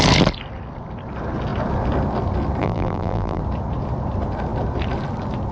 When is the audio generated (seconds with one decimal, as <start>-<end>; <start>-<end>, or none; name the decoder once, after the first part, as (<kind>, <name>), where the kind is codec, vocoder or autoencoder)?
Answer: 2.6-3.4 (vocoder, BigVGAN v2)